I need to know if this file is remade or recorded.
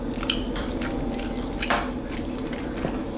recorded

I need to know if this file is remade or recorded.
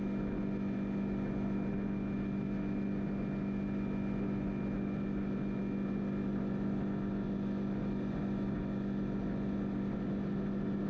recorded